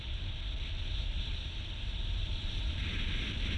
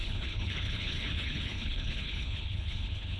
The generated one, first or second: second